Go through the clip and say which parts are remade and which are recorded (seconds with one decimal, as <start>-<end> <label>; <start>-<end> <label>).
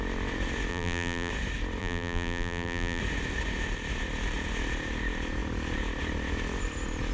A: 0.0-0.7 recorded; 0.7-1.3 remade; 1.3-1.8 recorded; 1.8-3.0 remade; 3.0-7.1 recorded